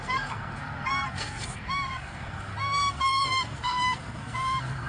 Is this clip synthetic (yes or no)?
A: yes